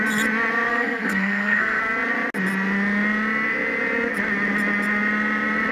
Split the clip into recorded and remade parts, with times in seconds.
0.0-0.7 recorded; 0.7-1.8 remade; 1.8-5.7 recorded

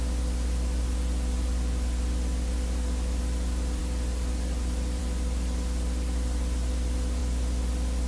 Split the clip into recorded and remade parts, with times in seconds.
0.0-8.1 recorded

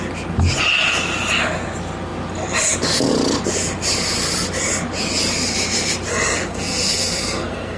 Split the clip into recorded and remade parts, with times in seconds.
0.0-6.1 recorded; 6.1-7.8 remade

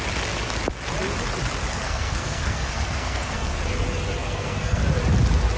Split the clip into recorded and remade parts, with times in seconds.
0.0-1.7 recorded; 1.7-3.6 remade; 3.6-4.2 recorded; 4.2-4.8 remade; 4.8-5.6 recorded

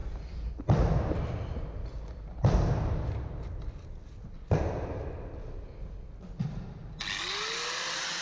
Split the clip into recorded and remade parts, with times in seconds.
0.0-8.2 recorded

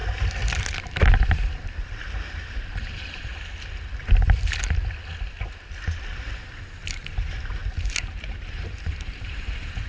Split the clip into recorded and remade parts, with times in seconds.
0.0-0.6 recorded; 0.6-3.3 remade; 3.3-6.4 recorded; 6.4-9.9 remade

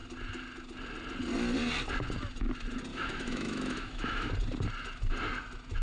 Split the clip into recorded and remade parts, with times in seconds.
0.0-2.9 recorded; 2.9-4.3 remade; 4.3-5.8 recorded